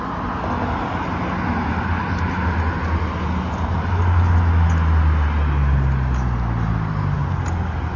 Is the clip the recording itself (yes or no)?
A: yes